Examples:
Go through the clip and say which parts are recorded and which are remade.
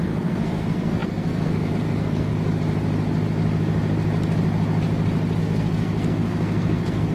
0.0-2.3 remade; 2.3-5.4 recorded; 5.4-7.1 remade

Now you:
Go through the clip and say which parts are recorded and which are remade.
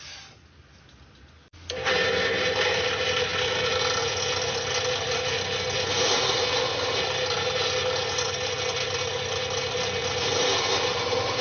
0.0-11.4 recorded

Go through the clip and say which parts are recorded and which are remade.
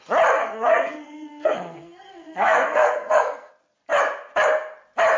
0.0-0.4 recorded; 0.4-3.5 remade; 3.5-5.2 recorded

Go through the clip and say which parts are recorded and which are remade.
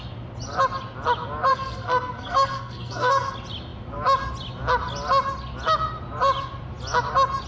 0.0-1.5 recorded; 1.5-3.3 remade; 3.3-7.5 recorded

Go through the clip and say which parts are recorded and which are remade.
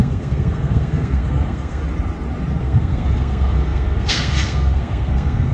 0.0-1.8 remade; 1.8-2.6 recorded; 2.6-5.5 remade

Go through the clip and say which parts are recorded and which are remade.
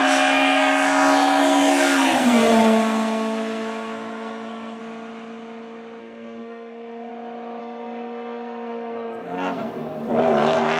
0.0-4.8 remade; 4.8-6.0 recorded; 6.0-7.1 remade; 7.1-7.6 recorded; 7.6-10.8 remade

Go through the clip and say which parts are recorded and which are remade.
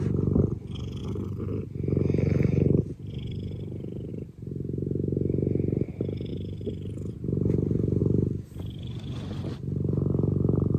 0.0-10.8 recorded